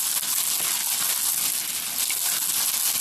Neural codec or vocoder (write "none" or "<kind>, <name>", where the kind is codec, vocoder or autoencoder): none